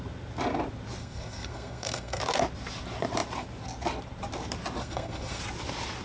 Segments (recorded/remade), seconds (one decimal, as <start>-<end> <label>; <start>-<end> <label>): 0.0-1.0 recorded; 1.0-2.2 remade; 2.2-4.8 recorded; 4.8-5.4 remade; 5.4-6.0 recorded

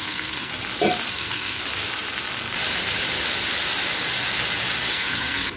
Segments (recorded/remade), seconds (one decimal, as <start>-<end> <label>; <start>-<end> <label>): 0.0-0.5 remade; 0.5-1.1 recorded; 1.1-1.6 remade; 1.6-4.9 recorded; 4.9-5.6 remade

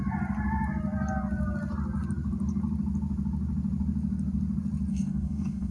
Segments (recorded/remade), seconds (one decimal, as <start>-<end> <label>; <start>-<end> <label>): 0.0-4.9 recorded; 4.9-5.7 remade

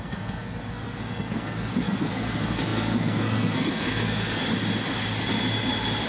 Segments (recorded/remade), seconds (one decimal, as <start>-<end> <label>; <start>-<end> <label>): 0.0-4.4 remade; 4.4-6.1 recorded

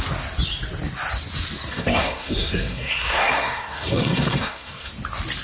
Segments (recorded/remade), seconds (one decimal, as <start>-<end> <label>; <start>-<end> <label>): 0.0-1.7 recorded; 1.7-4.9 remade; 4.9-5.4 recorded